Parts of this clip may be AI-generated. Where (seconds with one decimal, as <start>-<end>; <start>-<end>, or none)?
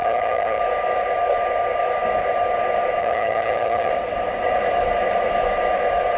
0.0-0.6; 3.0-3.9